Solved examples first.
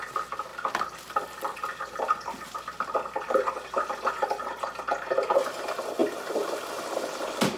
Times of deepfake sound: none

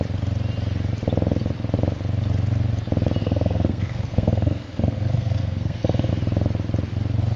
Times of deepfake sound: 3.2-6.1 (codec, SNAC)

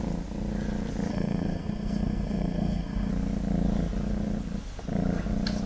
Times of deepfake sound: 1.1-3.1 (codec, SNAC)

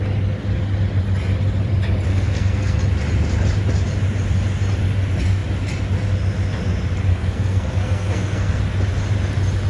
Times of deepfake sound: 2.1-2.8 (codec, SNAC); 7.1-8.6

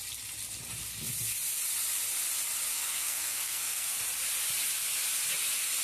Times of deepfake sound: 2.7-4.0 (codec, SNAC)